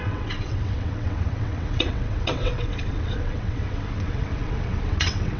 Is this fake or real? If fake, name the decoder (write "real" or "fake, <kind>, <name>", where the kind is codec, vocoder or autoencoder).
fake, vocoder, WaveNeXt